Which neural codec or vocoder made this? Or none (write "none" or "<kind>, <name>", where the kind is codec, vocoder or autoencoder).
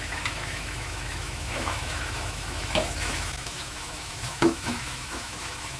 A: autoencoder, DAC-VAE